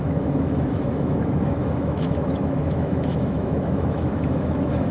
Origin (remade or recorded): remade